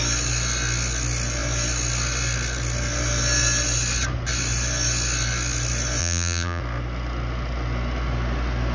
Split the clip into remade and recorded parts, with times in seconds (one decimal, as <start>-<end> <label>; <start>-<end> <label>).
0.0-6.0 recorded; 6.0-6.6 remade; 6.6-8.7 recorded